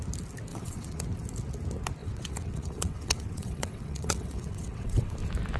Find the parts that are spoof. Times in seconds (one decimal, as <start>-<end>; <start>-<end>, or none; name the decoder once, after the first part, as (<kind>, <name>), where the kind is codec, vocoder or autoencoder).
0.5-1.0 (vocoder, WaveNeXt); 2.0-5.1